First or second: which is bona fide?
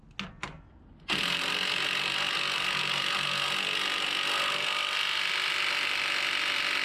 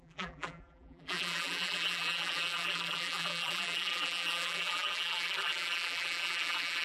first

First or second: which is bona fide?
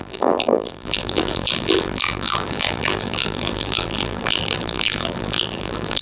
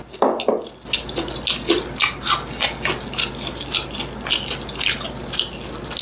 second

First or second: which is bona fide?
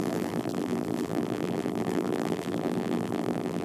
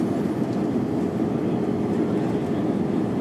second